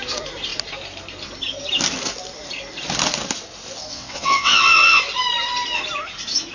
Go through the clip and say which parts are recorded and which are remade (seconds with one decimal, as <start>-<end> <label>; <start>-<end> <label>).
0.0-3.9 recorded; 3.9-5.0 remade; 5.0-6.5 recorded